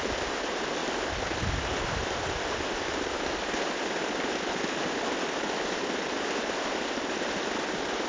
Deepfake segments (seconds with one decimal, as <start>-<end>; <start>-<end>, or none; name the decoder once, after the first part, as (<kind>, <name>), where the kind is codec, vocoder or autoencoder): none